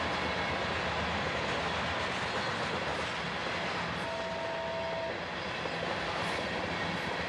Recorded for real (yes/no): yes